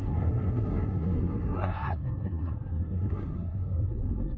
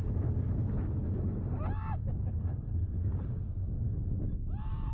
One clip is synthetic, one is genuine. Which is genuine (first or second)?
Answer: second